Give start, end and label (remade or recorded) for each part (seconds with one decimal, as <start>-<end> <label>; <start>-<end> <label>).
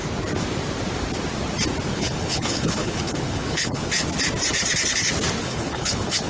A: 0.0-1.9 recorded; 1.9-3.9 remade; 3.9-5.4 recorded; 5.4-6.3 remade